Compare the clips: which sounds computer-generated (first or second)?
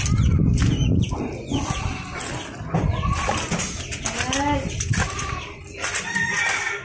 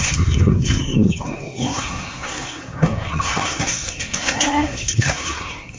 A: second